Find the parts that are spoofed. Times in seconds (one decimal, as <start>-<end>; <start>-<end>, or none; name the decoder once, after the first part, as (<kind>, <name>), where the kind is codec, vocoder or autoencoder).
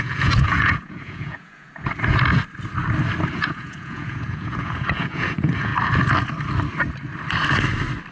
0.0-1.7 (vocoder, Vocos); 3.3-5.7